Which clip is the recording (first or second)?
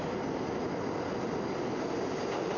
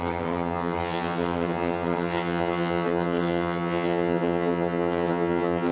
first